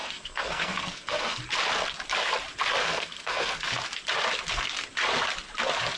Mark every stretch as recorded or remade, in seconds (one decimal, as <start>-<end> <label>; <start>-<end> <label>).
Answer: 0.0-1.4 remade; 1.4-2.8 recorded; 2.8-3.8 remade; 3.8-6.0 recorded